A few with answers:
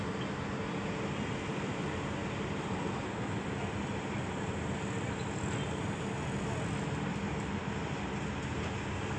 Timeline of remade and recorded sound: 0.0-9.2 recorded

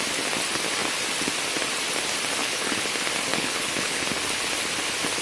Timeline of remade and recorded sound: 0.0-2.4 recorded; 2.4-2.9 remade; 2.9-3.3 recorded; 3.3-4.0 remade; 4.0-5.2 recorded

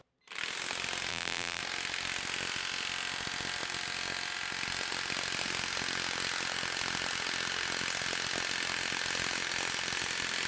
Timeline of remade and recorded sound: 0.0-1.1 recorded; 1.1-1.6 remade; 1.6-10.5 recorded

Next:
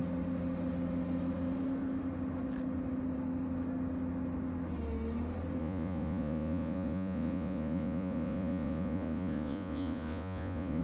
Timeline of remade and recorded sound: 0.0-5.6 recorded; 5.6-10.8 remade

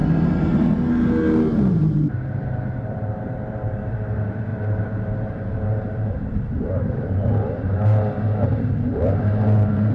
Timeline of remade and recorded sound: 0.0-1.7 recorded; 1.7-9.9 remade

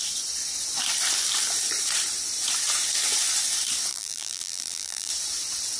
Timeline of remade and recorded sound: 0.0-3.9 recorded; 3.9-5.1 remade; 5.1-5.8 recorded

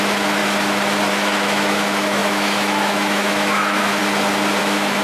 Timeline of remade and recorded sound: 0.0-0.4 remade; 0.4-1.1 recorded; 1.1-4.0 remade; 4.0-4.6 recorded; 4.6-5.0 remade

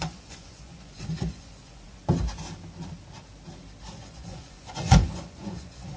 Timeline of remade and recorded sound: 0.0-2.0 remade; 2.0-4.0 recorded; 4.0-6.0 remade